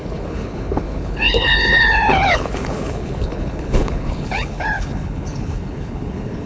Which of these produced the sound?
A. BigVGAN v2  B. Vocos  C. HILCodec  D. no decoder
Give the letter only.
C